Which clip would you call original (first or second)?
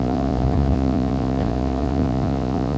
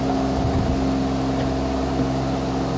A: second